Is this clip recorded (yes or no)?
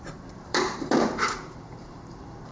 no